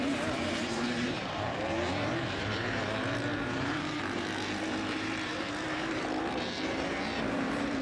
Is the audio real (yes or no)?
no